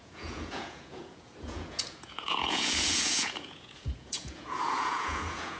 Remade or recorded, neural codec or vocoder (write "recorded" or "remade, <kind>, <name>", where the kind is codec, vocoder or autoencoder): remade, vocoder, Vocos